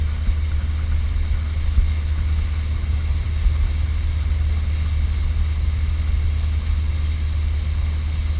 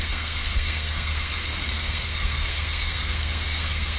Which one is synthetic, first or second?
second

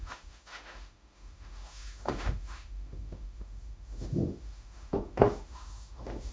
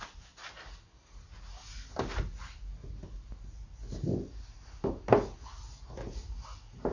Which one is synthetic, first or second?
first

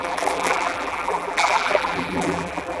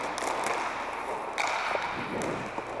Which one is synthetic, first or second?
first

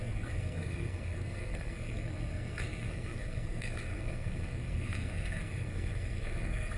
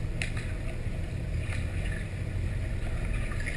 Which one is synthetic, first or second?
first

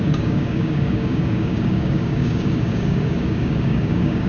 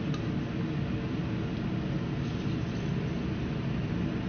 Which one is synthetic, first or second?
first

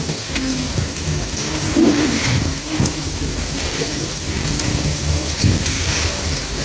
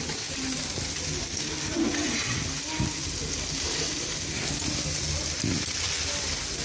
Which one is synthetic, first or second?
first